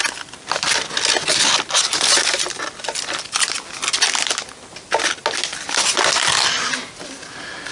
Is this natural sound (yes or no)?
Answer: yes